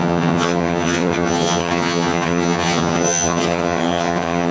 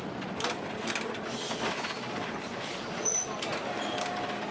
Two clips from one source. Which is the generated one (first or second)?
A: first